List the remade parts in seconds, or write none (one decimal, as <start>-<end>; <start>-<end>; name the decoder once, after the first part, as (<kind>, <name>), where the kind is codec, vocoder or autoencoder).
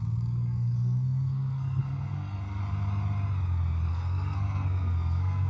0.0-2.6 (codec, SNAC); 3.9-5.5